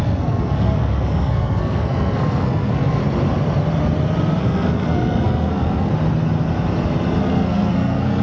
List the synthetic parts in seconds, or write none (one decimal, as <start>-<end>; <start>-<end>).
0.0-3.0; 4.4-5.9; 7.2-8.2